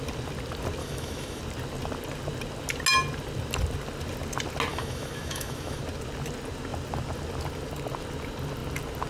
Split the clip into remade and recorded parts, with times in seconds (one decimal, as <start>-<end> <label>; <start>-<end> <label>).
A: 0.0-0.8 recorded; 0.8-1.4 remade; 1.4-4.7 recorded; 4.7-5.8 remade; 5.8-9.1 recorded